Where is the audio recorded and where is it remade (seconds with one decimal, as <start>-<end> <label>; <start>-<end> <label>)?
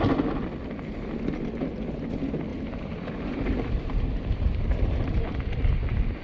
0.0-2.5 recorded; 2.5-5.4 remade; 5.4-6.2 recorded